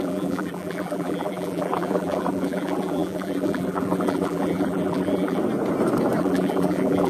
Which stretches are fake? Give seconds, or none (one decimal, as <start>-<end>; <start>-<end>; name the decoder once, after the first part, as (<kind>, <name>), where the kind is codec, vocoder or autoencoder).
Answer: 0.0-5.4 (vocoder, BigVGAN v2); 6.2-7.1